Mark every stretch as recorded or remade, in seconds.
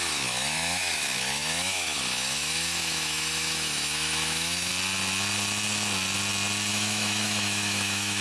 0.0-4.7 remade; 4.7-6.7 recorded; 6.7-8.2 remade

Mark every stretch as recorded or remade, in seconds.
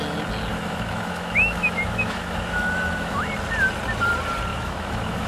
0.0-0.5 recorded; 0.5-3.3 remade; 3.3-4.5 recorded; 4.5-5.3 remade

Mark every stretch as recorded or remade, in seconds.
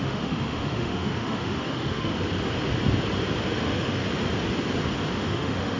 0.0-2.1 remade; 2.1-3.5 recorded; 3.5-4.0 remade; 4.0-5.1 recorded; 5.1-5.8 remade